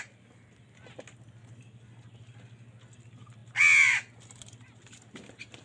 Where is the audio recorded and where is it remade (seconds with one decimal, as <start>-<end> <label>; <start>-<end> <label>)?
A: 0.0-5.6 recorded